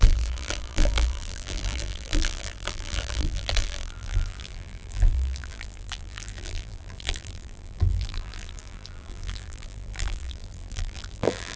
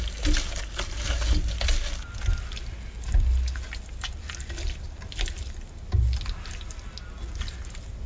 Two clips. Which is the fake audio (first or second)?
first